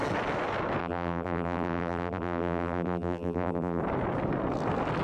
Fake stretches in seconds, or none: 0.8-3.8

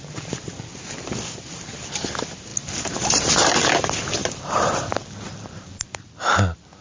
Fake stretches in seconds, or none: 0.0-0.7; 2.5-3.3; 4.2-6.2

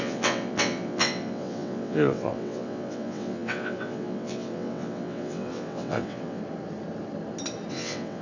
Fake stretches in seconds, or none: 0.0-6.4; 7.7-8.2

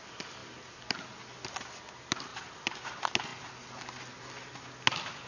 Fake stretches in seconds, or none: none